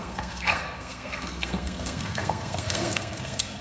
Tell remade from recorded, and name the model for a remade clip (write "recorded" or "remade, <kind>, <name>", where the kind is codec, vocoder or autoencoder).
remade, codec, SNAC